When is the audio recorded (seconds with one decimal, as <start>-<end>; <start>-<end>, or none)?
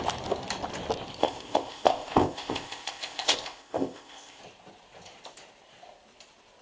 0.0-1.2; 4.4-6.6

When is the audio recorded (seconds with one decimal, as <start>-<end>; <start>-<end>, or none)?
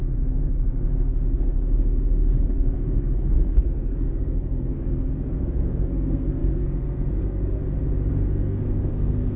7.6-8.1